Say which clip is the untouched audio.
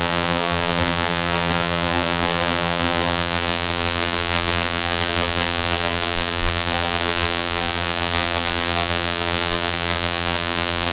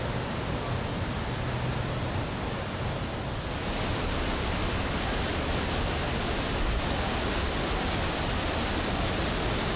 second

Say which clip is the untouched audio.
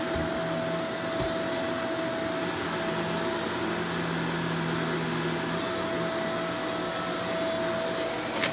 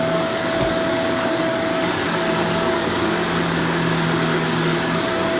first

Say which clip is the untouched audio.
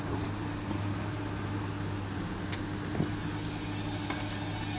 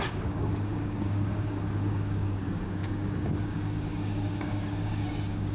first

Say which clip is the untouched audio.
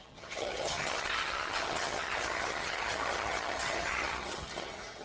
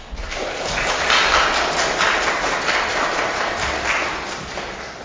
second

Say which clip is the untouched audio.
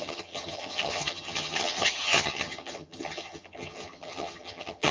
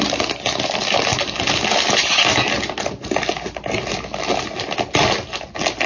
second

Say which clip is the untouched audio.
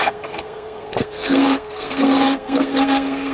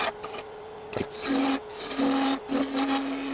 second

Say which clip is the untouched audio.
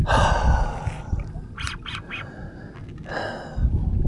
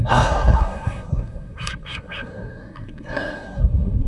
first